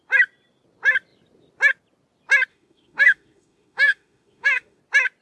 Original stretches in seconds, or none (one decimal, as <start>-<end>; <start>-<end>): 0.0-2.5; 4.8-5.2